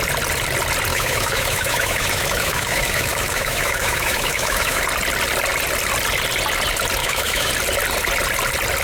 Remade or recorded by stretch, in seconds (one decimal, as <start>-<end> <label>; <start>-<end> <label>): 0.0-0.9 recorded; 0.9-4.8 remade; 4.8-7.0 recorded; 7.0-7.5 remade; 7.5-8.8 recorded